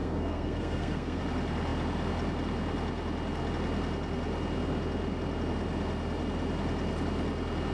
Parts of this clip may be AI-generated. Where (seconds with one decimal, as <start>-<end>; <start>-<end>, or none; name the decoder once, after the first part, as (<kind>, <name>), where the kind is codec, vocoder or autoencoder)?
0.0-1.2 (codec, SNAC)